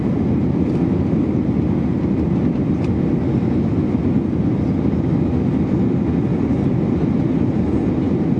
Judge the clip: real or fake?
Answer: real